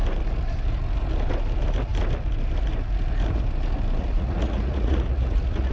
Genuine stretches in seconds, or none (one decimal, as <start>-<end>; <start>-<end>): 0.0-4.0